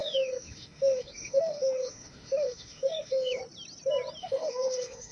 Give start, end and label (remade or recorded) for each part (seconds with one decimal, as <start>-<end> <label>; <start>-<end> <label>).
0.0-3.4 remade; 3.4-4.2 recorded; 4.2-5.1 remade